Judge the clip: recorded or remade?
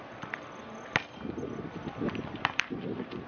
recorded